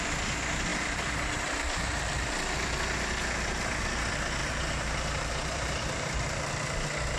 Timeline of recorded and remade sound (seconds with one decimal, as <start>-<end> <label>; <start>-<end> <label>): 0.0-0.7 recorded; 0.7-2.0 remade; 2.0-4.4 recorded; 4.4-6.5 remade; 6.5-7.2 recorded